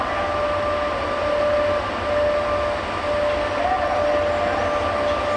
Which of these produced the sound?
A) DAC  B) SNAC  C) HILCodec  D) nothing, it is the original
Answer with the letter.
D